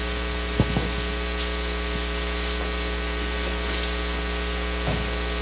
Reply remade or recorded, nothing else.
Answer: recorded